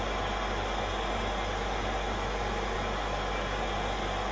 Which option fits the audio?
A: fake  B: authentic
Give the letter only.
B